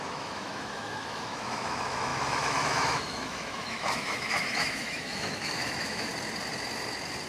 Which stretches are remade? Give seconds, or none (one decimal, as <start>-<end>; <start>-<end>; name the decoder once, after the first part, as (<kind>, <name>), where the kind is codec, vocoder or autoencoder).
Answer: 0.0-6.1 (autoencoder, DAC-VAE)